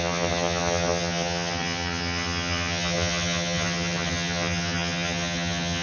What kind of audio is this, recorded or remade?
remade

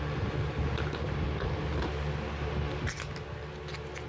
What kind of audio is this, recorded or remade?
recorded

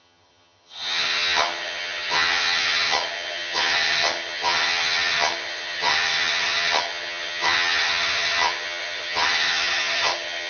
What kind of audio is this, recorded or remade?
remade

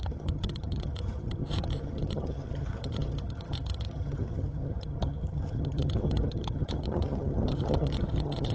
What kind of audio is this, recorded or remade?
remade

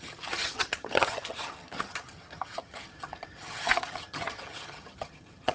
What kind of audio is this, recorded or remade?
remade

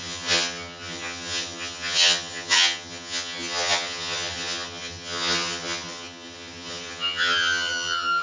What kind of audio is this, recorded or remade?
remade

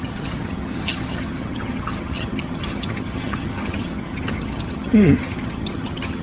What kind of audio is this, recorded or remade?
remade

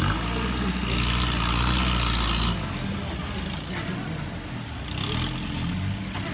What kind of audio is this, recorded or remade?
recorded